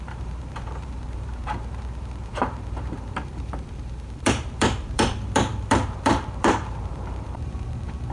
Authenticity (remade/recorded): remade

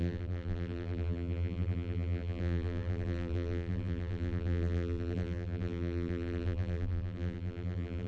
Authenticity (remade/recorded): remade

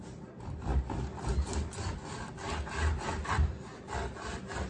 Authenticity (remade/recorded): recorded